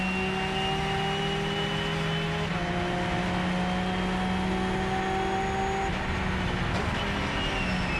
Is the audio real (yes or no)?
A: yes